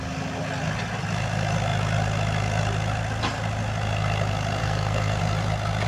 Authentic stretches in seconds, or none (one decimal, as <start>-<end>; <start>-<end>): 0.0-4.6; 5.2-5.9